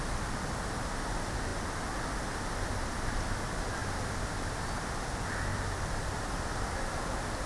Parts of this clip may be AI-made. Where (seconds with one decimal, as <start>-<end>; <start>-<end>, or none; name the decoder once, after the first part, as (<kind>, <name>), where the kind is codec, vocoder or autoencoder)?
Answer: none